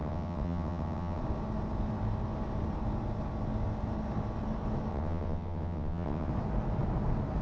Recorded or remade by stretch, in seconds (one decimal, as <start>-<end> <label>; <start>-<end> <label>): 0.0-1.2 remade; 1.2-4.9 recorded; 4.9-6.3 remade; 6.3-7.4 recorded